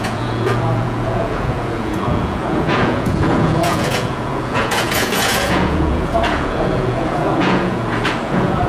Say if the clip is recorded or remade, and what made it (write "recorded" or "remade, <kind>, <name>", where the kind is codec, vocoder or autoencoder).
remade, vocoder, Vocos